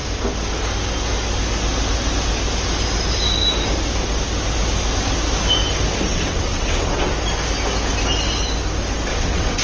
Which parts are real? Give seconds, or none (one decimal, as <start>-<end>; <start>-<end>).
0.0-6.1; 7.1-9.1